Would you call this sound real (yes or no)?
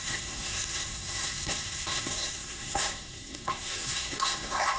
no